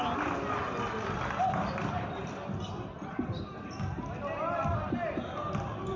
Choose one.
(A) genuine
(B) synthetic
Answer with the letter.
A